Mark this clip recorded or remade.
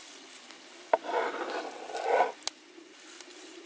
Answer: recorded